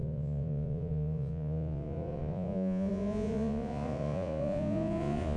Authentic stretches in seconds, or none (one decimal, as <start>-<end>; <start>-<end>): none